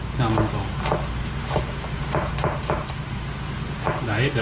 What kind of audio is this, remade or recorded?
recorded